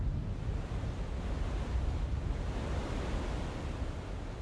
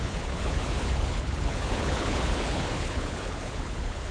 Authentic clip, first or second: first